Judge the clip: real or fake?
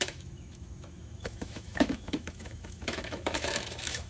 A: fake